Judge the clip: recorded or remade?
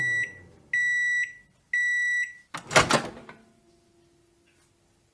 recorded